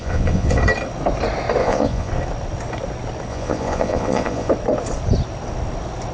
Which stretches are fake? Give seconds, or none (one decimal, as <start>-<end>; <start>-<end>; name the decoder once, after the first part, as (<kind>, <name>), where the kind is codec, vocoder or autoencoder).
0.0-0.6 (vocoder, Vocos); 1.6-2.1; 3.3-4.5